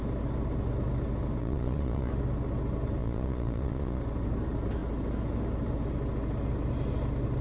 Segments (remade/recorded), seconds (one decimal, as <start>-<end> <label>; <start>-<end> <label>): 0.0-1.4 recorded; 1.4-2.1 remade; 2.1-3.0 recorded; 3.0-4.0 remade; 4.0-7.4 recorded